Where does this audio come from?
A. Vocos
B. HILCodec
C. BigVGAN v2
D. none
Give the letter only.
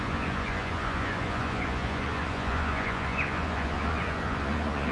A